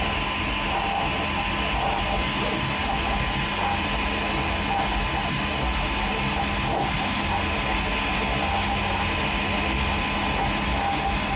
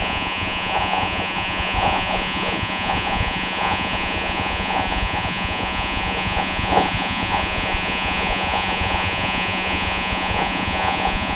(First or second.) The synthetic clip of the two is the second